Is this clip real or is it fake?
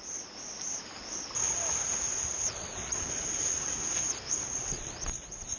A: real